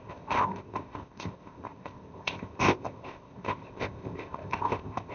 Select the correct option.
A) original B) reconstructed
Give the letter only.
B